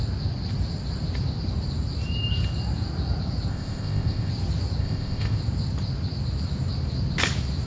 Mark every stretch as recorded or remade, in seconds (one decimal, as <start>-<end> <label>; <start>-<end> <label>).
0.0-3.5 recorded; 3.5-4.3 remade; 4.3-4.8 recorded; 4.8-5.4 remade; 5.4-7.7 recorded